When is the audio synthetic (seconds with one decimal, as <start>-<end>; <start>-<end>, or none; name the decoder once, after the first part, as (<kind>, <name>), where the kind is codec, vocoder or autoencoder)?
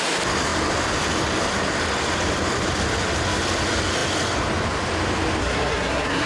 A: 5.4-6.3 (codec, SNAC)